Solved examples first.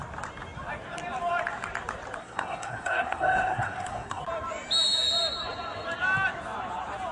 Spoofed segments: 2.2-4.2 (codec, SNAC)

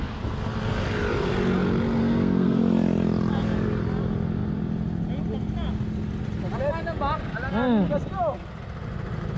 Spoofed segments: 2.0-2.6 (codec, SNAC)

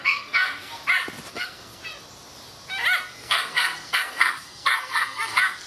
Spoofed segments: 0.0-0.8 (codec, SNAC); 1.3-1.8; 3.0-5.7

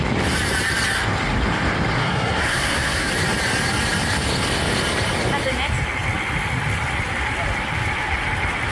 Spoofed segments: 2.0-3.1 (codec, SNAC)

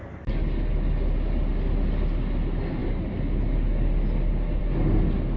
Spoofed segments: none

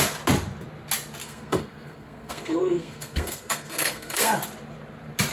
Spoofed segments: 1.2-4.4 (codec, SNAC)

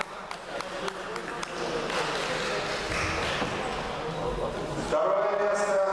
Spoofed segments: none